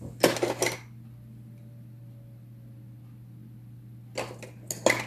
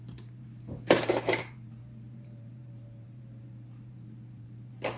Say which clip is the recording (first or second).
first